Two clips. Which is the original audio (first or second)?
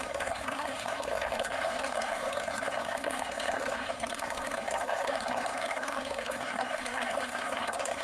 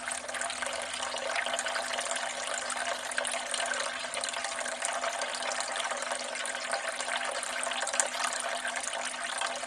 second